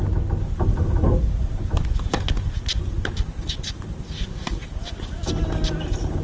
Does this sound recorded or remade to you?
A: recorded